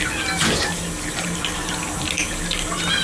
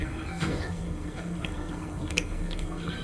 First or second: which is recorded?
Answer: first